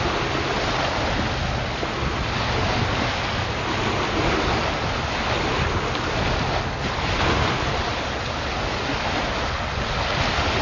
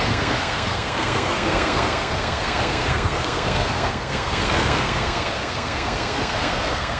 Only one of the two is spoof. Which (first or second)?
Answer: second